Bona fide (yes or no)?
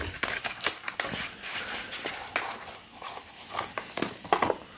yes